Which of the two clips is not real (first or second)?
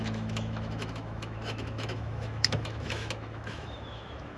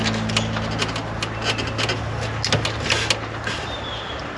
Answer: first